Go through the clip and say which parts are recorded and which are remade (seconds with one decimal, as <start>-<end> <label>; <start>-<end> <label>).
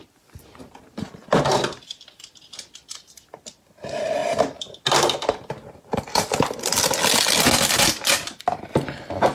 0.0-9.3 recorded